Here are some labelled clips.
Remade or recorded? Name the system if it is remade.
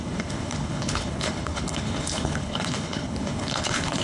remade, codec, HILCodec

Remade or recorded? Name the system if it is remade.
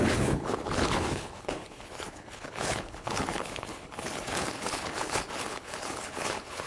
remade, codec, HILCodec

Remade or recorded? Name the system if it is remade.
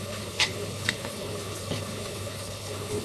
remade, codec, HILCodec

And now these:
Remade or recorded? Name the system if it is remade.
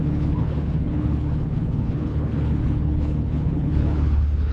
remade, codec, HILCodec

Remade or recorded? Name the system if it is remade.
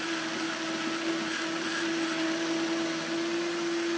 recorded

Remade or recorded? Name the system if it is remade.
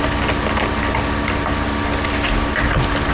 recorded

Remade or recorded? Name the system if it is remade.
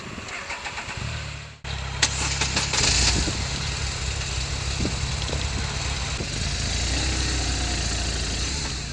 recorded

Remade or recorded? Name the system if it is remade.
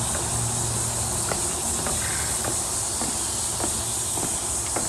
recorded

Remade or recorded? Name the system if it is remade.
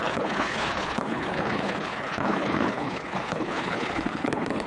remade, codec, HILCodec